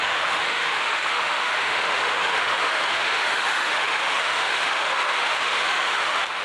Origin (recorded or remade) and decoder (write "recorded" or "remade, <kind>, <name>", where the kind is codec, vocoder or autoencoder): remade, autoencoder, DAC-VAE